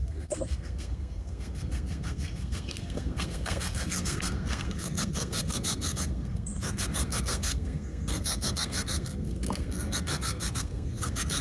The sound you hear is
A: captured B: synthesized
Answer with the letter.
B